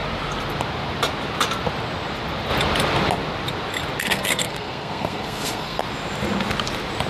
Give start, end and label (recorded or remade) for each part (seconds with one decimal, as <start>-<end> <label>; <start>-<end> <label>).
0.0-4.0 recorded; 4.0-5.8 remade; 5.8-7.1 recorded